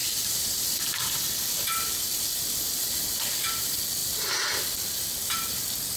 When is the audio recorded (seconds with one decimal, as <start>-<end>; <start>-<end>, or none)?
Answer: 0.0-6.0